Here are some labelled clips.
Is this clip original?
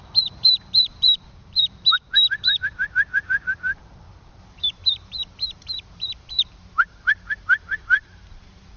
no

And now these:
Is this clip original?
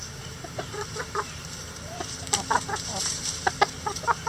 no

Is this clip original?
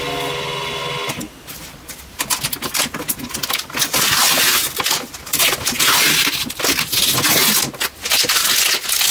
yes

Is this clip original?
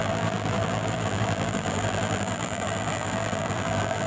no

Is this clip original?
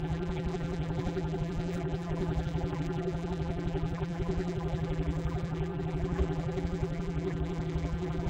no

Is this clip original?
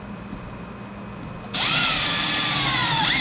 yes